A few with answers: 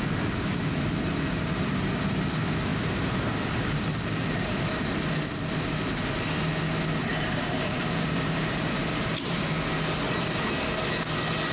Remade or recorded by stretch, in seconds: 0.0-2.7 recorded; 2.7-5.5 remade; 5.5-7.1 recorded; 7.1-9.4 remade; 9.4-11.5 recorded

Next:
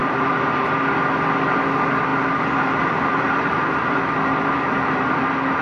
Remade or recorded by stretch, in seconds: 0.0-0.7 remade; 0.7-2.1 recorded; 2.1-5.6 remade